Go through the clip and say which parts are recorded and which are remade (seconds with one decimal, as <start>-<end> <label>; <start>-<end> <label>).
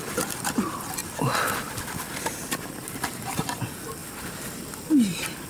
0.0-1.0 recorded; 1.0-3.6 remade; 3.6-4.0 recorded; 4.0-4.6 remade; 4.6-5.5 recorded